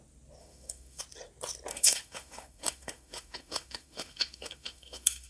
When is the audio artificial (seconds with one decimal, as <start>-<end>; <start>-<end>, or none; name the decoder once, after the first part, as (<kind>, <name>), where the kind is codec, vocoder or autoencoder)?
0.4-1.0 (autoencoder, DAC-VAE); 1.7-5.3